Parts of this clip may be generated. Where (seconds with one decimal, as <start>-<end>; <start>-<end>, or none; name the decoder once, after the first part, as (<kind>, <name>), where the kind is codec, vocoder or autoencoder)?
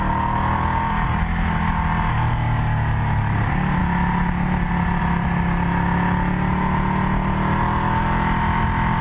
none